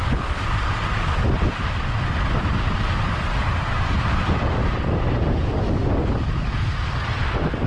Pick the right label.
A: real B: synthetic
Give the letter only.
B